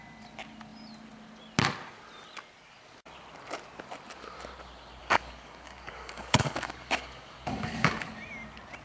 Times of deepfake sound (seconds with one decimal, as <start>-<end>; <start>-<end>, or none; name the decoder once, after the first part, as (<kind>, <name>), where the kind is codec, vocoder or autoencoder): 5.0-8.1 (codec, DAC)